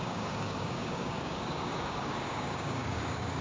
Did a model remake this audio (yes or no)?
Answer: yes